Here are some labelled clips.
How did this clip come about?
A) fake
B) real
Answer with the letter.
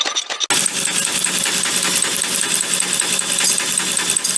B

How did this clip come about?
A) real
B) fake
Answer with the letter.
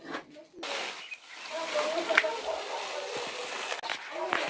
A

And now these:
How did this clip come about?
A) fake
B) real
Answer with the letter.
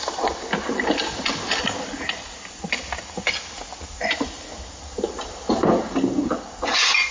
B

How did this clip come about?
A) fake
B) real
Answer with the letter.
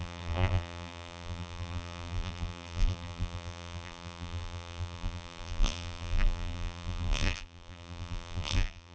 A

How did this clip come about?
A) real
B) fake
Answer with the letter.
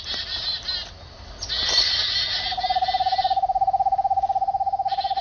A